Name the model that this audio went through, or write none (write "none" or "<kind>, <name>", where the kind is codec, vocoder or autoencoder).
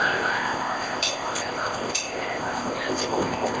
codec, ZipCodec